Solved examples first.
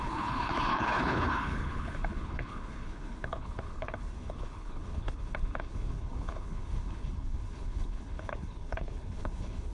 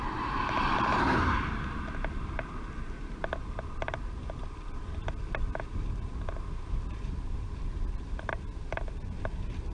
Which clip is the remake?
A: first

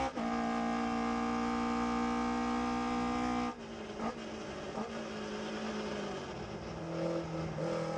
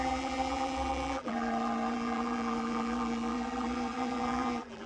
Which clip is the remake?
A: second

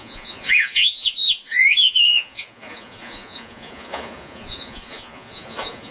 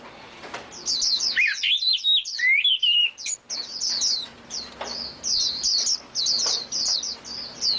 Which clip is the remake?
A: first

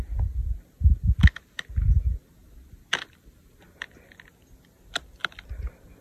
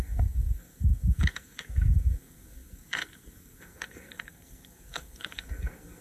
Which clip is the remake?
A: second